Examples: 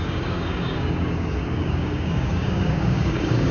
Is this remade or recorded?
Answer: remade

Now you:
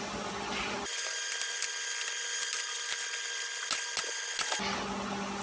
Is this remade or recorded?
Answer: recorded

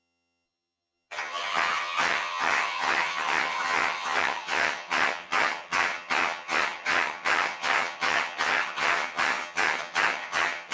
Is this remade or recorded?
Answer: remade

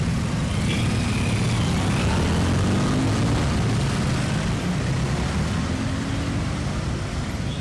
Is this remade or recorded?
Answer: recorded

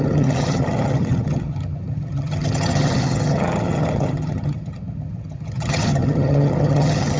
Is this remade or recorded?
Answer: remade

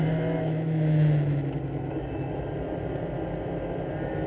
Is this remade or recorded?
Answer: recorded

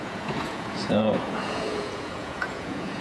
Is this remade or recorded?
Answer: remade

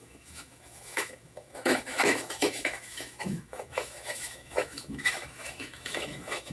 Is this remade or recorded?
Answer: remade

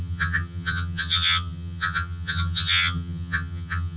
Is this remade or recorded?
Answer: remade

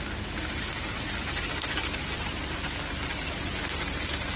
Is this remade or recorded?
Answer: recorded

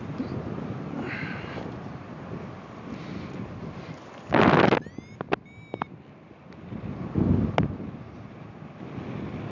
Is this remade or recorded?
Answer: recorded